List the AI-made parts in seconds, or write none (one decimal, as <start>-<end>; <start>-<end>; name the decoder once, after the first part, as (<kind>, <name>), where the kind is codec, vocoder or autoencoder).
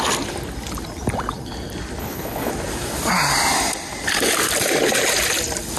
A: 2.0-2.5 (codec, HILCodec)